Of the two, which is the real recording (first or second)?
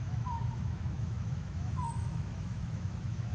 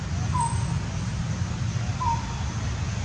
second